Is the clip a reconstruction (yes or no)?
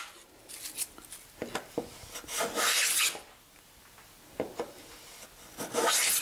no